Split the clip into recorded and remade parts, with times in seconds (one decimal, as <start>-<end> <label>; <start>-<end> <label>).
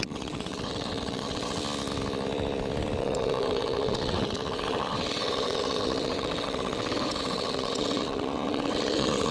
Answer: 0.0-1.6 remade; 1.6-3.0 recorded; 3.0-9.3 remade